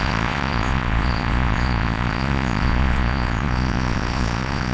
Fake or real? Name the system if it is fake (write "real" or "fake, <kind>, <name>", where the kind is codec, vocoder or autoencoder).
fake, vocoder, Vocos